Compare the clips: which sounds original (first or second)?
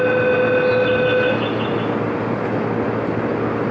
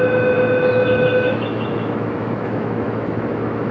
first